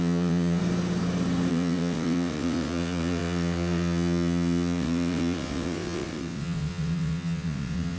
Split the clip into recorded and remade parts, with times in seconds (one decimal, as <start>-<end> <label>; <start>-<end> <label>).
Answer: 0.0-0.6 remade; 0.6-1.5 recorded; 1.5-8.0 remade